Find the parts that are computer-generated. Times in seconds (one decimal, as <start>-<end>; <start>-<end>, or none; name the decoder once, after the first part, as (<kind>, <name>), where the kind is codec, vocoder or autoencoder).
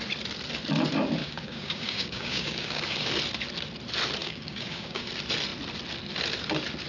1.2-3.1 (codec, DAC); 4.2-5.1